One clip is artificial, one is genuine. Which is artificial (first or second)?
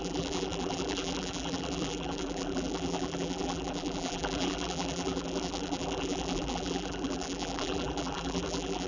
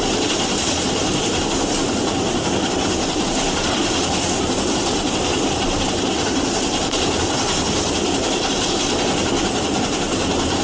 first